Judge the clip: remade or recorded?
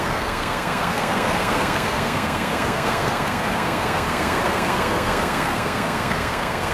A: remade